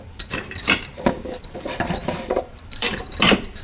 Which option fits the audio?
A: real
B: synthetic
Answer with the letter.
B